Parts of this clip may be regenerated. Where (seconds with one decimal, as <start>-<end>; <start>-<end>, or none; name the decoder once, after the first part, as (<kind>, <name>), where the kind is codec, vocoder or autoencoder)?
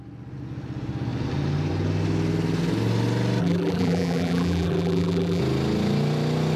3.4-5.4 (vocoder, BigVGAN v2)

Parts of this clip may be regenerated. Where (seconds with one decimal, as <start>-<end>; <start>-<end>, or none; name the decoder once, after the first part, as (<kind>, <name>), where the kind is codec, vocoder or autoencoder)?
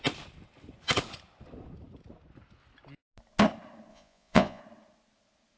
3.9-4.6 (vocoder, Vocos)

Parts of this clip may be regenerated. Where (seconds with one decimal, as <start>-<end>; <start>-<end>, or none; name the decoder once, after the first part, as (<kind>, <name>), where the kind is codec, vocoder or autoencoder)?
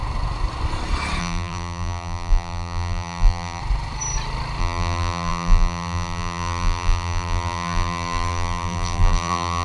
1.2-3.6 (vocoder, BigVGAN v2); 4.6-9.6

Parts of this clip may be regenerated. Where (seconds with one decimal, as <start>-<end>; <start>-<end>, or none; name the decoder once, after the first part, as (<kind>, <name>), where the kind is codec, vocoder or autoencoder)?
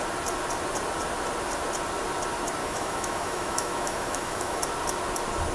2.6-4.6 (autoencoder, DAC-VAE)